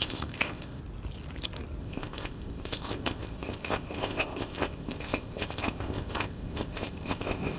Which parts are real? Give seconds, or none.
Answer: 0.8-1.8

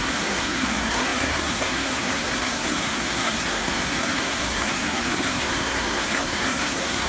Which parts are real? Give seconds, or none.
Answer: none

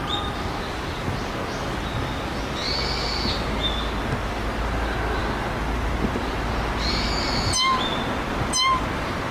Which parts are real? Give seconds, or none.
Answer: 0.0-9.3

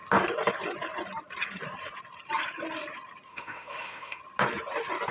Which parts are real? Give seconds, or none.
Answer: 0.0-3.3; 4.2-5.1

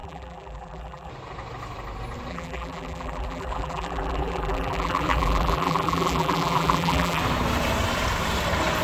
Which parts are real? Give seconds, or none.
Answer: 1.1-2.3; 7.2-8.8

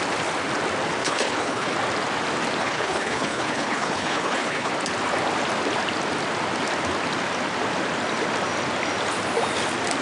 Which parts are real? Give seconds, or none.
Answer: 0.0-1.0; 1.7-2.6; 4.7-10.0

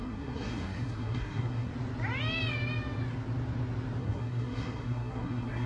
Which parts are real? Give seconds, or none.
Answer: 1.7-4.0